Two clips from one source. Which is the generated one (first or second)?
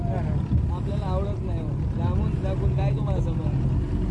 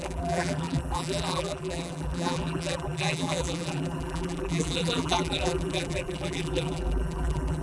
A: second